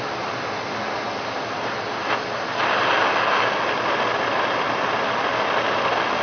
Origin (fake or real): real